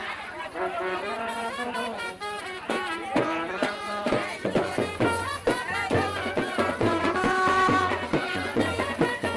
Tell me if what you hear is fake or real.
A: fake